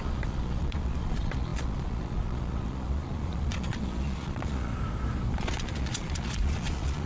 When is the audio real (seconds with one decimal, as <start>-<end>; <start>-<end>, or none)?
4.7-5.3